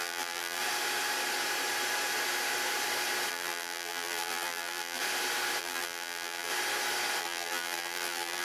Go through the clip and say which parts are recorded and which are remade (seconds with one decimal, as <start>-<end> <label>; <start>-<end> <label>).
0.0-0.6 remade; 0.6-3.3 recorded; 3.3-5.0 remade; 5.0-5.6 recorded; 5.6-6.5 remade; 6.5-7.2 recorded; 7.2-8.4 remade

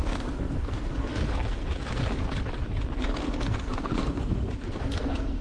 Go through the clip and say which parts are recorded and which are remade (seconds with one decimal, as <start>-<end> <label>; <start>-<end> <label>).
0.0-2.0 remade; 2.0-3.0 recorded; 3.0-5.4 remade

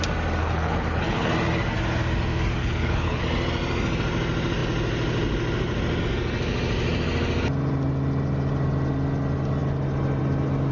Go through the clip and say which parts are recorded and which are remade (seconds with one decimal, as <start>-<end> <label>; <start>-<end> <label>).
0.0-0.4 recorded; 0.4-1.3 remade; 1.3-2.6 recorded; 2.6-3.2 remade; 3.2-10.7 recorded

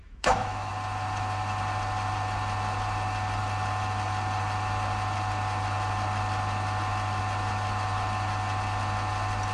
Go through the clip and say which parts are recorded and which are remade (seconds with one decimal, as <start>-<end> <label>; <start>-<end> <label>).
0.0-0.7 remade; 0.7-9.5 recorded

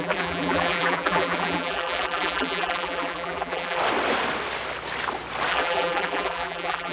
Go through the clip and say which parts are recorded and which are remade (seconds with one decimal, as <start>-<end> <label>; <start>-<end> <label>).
0.0-3.8 remade; 3.8-5.5 recorded; 5.5-6.9 remade